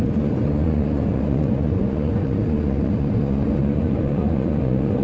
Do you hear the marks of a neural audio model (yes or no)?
yes